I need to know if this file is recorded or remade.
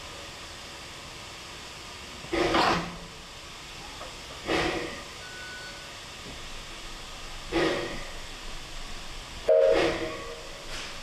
recorded